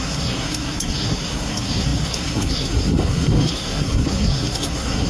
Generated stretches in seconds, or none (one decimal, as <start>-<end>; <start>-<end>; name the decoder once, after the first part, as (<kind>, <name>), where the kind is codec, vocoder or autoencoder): 0.0-5.1 (codec, SNAC)